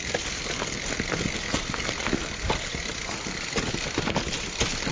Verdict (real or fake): real